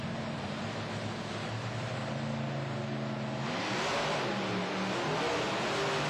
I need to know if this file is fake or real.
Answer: real